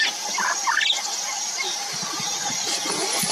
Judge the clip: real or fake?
real